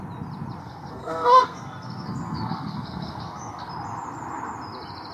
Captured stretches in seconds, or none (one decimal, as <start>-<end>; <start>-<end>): 0.0-0.6; 3.7-5.1